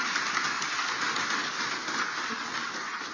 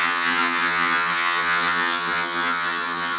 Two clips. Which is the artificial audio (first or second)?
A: second